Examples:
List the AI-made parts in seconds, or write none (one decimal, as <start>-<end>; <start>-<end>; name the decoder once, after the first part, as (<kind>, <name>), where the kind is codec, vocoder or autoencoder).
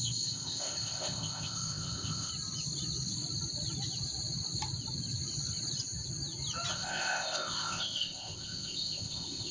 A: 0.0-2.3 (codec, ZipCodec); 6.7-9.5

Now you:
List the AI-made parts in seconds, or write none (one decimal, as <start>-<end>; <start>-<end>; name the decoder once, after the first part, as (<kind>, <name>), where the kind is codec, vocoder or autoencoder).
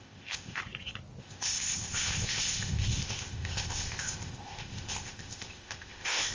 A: 0.0-0.6 (codec, ZipCodec); 1.2-6.3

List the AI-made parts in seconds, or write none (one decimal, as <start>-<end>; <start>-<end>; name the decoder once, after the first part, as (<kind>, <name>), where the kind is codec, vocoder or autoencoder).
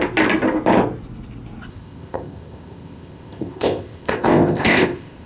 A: 1.7-5.3 (codec, ZipCodec)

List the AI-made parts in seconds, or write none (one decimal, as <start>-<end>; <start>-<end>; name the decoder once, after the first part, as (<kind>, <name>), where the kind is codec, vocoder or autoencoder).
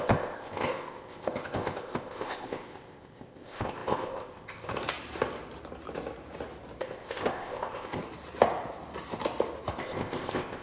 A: 0.0-4.7 (codec, ZipCodec); 6.8-8.0; 9.8-10.6